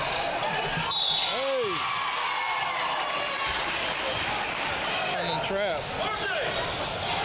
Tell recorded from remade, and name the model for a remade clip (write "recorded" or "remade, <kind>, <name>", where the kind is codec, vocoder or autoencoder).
recorded